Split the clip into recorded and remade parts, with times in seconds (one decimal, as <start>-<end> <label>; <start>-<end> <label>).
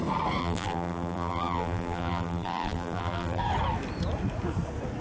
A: 0.0-0.4 recorded; 0.4-3.4 remade; 3.4-5.0 recorded